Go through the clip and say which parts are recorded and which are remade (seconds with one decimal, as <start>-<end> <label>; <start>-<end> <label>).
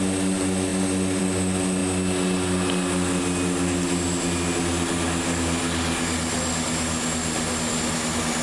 0.0-8.4 recorded